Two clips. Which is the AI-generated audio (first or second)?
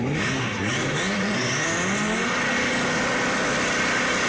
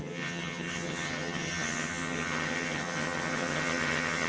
second